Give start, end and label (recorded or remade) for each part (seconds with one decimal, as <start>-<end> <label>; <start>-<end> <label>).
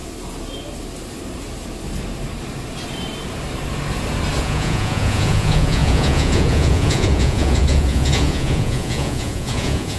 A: 0.0-4.4 recorded; 4.4-10.0 remade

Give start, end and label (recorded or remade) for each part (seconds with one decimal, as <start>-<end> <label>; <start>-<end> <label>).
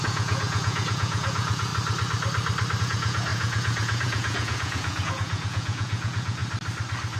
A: 0.0-1.7 remade; 1.7-2.8 recorded; 2.8-6.4 remade; 6.4-7.2 recorded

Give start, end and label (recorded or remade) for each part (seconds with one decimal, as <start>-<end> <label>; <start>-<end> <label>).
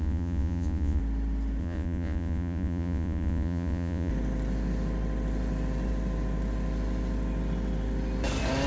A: 0.0-1.0 remade; 1.0-1.6 recorded; 1.6-4.1 remade; 4.1-8.7 recorded